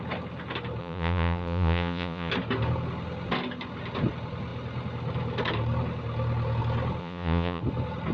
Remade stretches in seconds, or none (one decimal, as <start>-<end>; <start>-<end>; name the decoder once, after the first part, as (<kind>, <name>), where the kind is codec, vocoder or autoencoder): 0.8-2.3 (vocoder, Vocos); 7.0-7.6

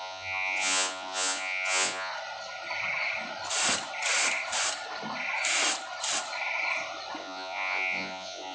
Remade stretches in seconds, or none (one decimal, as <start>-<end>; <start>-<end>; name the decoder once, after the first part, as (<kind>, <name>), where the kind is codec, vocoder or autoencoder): 0.0-2.1 (vocoder, Vocos); 7.2-8.5